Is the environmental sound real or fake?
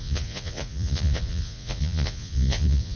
fake